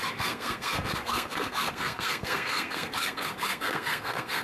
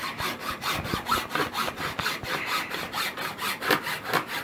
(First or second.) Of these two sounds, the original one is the second